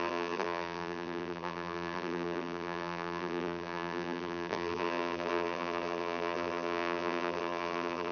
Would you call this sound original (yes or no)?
no